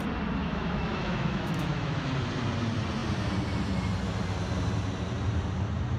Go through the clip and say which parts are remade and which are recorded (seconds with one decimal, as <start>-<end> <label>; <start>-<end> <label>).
0.0-0.4 recorded; 0.4-2.1 remade; 2.1-6.0 recorded